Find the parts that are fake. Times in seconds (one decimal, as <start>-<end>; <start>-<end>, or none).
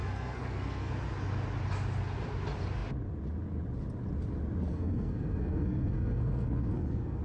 0.0-0.9; 4.7-7.2